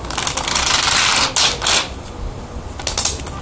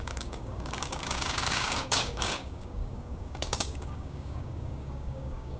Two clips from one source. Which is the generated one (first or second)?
second